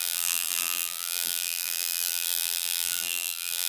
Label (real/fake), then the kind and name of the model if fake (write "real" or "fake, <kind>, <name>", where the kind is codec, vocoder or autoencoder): fake, vocoder, BigVGAN v2